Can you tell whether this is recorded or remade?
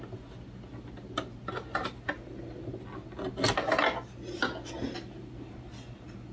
recorded